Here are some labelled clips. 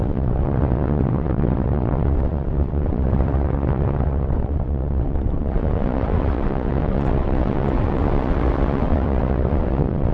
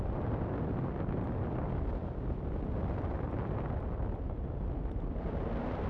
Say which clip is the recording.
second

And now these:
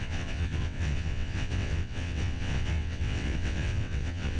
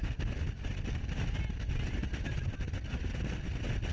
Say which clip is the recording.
second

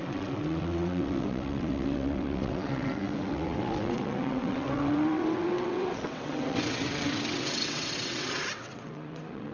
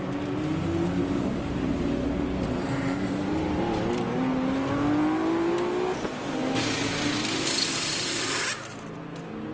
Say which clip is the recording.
second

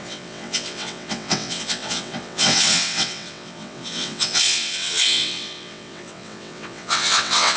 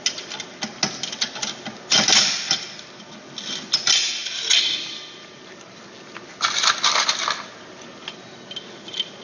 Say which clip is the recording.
second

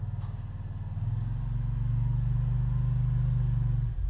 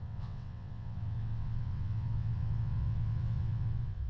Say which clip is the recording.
first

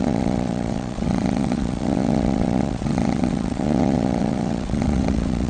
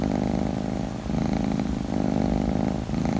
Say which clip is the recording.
second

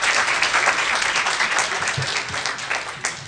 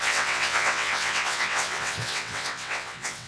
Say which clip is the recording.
first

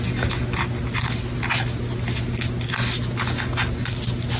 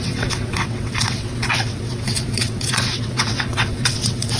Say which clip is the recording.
first